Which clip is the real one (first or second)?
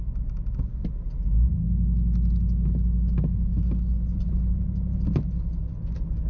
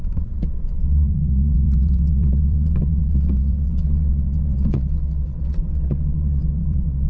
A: first